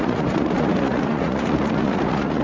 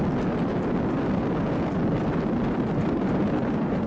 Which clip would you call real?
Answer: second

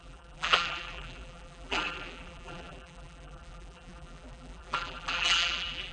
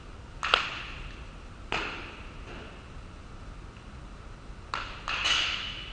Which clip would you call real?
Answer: second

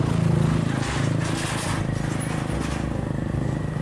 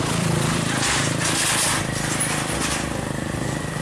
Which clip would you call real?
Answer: first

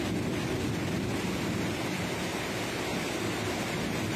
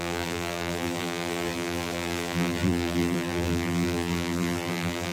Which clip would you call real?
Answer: first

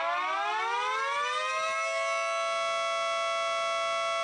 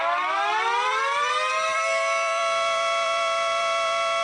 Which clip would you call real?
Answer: first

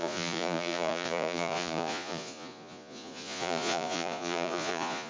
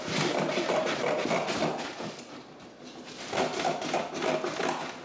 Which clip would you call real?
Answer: second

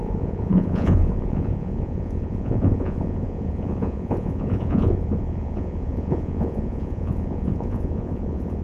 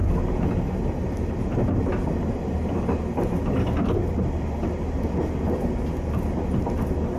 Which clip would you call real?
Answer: second